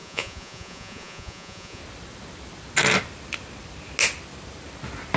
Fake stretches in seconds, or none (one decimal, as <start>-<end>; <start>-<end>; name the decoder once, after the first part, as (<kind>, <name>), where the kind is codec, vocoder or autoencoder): 0.0-1.8 (vocoder, Vocos)